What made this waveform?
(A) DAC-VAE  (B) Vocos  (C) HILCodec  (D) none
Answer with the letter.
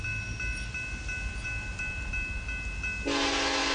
D